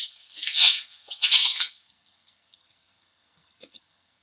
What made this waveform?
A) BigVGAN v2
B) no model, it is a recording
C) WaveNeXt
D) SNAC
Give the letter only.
D